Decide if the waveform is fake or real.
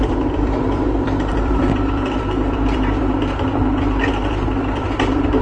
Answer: fake